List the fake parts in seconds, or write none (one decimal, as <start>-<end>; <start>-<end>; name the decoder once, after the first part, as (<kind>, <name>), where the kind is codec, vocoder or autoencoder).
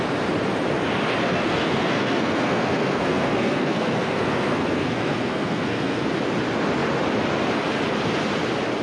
1.2-6.0 (codec, SNAC)